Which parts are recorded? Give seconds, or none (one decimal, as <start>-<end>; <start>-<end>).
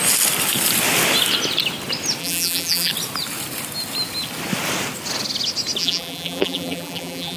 0.0-2.2; 2.9-5.8